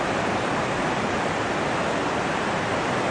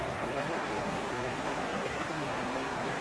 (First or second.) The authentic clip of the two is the first